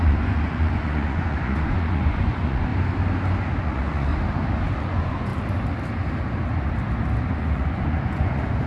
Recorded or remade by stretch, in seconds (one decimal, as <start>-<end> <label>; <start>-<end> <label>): 0.0-2.7 remade; 2.7-3.6 recorded; 3.6-4.1 remade; 4.1-4.8 recorded; 4.8-5.3 remade; 5.3-7.2 recorded; 7.2-8.7 remade